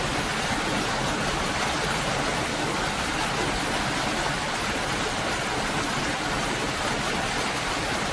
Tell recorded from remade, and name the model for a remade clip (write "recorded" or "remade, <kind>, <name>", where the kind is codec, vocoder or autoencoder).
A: recorded